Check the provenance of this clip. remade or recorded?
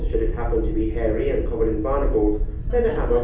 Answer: recorded